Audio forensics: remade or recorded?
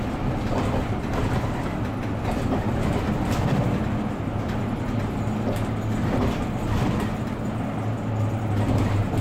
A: recorded